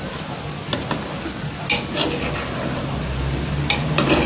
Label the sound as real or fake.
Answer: real